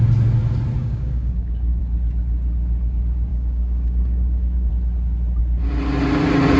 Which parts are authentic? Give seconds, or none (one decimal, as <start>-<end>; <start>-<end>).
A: 0.0-0.8; 1.8-3.3; 4.7-6.6